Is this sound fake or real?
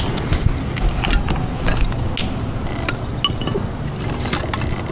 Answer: real